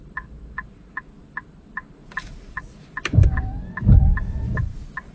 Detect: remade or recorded remade